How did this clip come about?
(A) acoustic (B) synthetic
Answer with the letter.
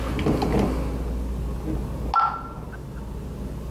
A